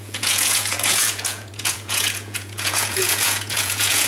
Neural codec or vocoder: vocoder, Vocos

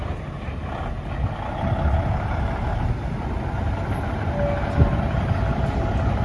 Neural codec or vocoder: none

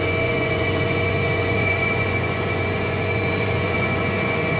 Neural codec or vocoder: vocoder, Vocos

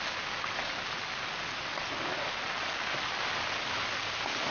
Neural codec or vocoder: none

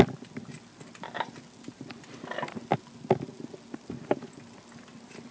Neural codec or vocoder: none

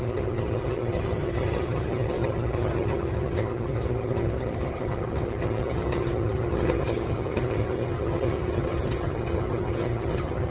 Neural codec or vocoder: vocoder, HiFi-GAN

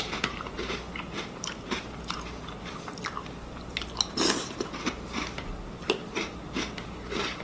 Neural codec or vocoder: vocoder, BigVGAN v2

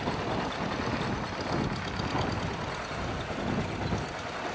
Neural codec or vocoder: none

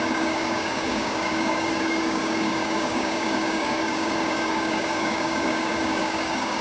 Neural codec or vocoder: codec, DAC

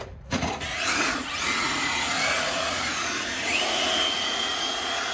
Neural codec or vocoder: vocoder, Vocos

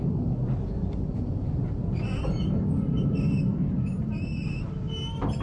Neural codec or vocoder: none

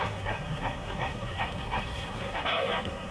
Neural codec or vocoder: codec, SNAC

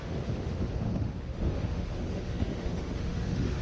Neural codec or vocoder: autoencoder, DAC-VAE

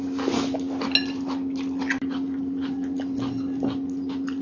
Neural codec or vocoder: none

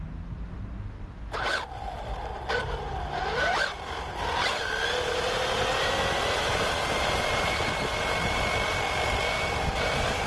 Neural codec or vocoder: none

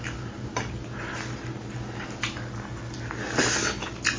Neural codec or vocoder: none